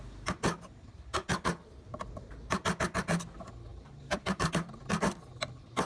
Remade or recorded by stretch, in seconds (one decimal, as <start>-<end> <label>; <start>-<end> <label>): 0.0-3.7 recorded; 3.7-4.8 remade; 4.8-5.8 recorded